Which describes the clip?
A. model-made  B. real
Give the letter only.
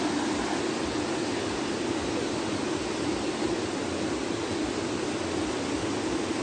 B